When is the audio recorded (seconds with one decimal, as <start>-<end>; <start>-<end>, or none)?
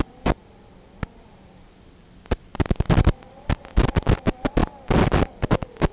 0.0-5.9